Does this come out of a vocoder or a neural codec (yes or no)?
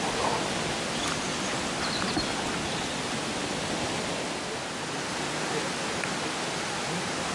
no